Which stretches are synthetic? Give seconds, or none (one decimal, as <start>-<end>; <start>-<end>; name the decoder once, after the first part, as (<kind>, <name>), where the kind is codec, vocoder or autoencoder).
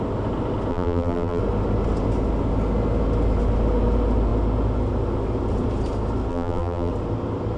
0.7-1.4 (vocoder, BigVGAN v2); 6.3-6.9